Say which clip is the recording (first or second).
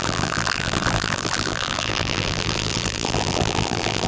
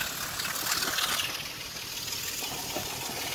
second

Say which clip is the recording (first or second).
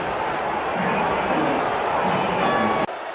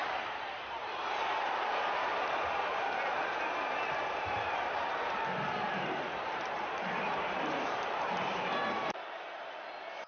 first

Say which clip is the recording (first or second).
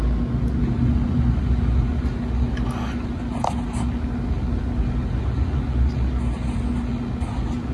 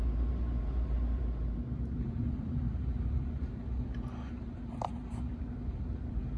first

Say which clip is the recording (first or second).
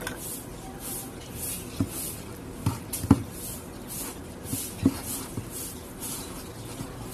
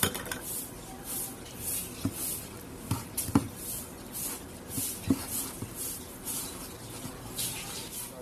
first